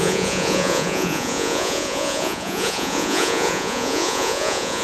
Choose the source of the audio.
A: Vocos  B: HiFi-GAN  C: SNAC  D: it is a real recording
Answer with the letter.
A